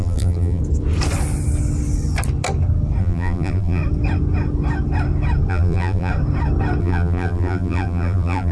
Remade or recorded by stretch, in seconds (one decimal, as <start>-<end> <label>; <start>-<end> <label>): 0.0-0.6 remade; 0.6-3.0 recorded; 3.0-3.8 remade; 3.8-5.5 recorded; 5.5-6.1 remade; 6.1-6.8 recorded; 6.8-8.5 remade